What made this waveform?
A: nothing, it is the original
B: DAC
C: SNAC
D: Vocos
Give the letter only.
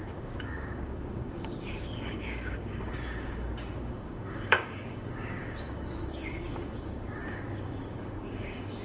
B